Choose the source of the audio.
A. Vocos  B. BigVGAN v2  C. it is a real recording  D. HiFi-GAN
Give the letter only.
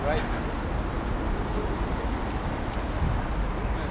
C